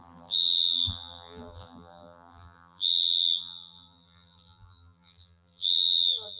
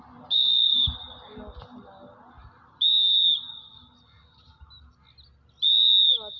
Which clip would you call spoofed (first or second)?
first